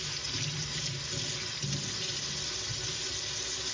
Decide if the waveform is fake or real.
real